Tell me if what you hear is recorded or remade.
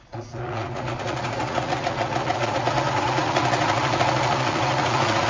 remade